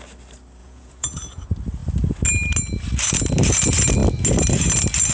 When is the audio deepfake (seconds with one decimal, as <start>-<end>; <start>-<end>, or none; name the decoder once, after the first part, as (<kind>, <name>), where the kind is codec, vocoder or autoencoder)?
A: 0.6-1.4 (vocoder, Vocos)